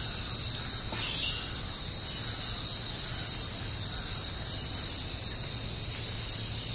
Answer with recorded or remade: recorded